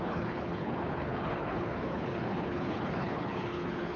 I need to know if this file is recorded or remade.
remade